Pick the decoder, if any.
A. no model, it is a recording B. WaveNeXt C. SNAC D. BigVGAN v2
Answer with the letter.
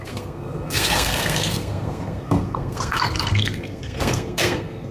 C